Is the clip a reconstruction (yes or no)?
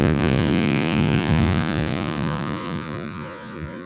yes